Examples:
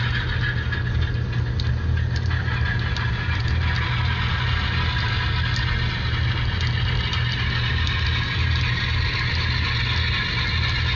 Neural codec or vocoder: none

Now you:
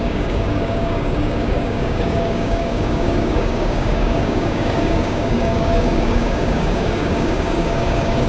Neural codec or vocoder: codec, DAC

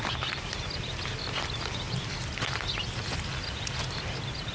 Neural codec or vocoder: none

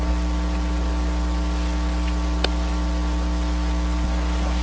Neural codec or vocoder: none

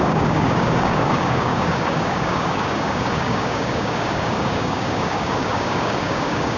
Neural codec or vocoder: codec, DAC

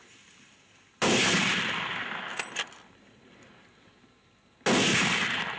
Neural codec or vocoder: none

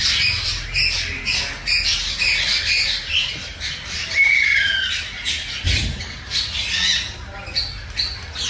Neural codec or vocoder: none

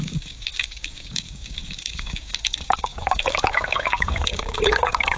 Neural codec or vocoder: codec, DAC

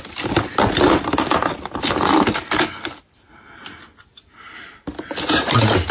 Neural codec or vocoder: none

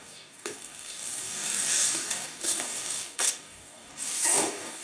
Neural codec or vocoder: codec, DAC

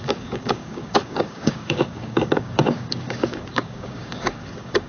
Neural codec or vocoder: codec, DAC